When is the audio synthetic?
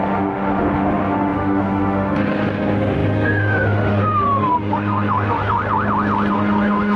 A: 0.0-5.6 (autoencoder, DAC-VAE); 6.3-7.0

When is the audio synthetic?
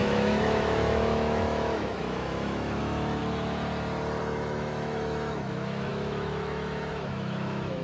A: 0.0-3.2 (autoencoder, DAC-VAE); 4.2-7.8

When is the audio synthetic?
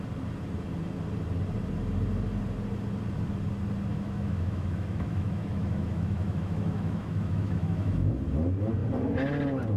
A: 3.9-8.1 (autoencoder, DAC-VAE)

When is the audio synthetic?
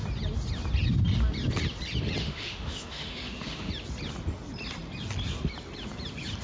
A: 2.2-3.7 (autoencoder, DAC-VAE)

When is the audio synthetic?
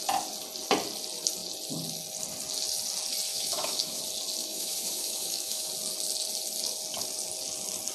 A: 3.3-4.0 (autoencoder, DAC-VAE); 4.4-5.7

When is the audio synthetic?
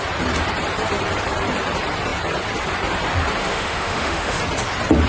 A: 3.4-4.4 (autoencoder, DAC-VAE)